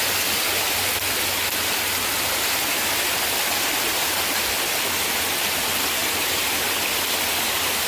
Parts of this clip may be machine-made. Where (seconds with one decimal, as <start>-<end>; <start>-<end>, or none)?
2.1-3.7; 6.0-6.6